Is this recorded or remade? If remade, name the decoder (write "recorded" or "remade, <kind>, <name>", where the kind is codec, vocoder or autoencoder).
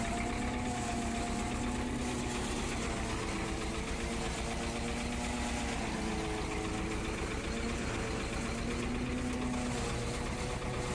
recorded